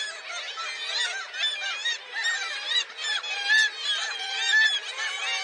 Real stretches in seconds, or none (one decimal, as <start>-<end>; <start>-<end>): 0.0-1.8; 2.9-4.0; 4.6-5.4